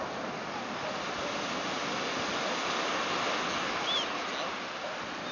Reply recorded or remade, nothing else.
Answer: recorded